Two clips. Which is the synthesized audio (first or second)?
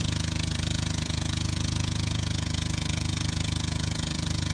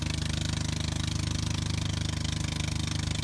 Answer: first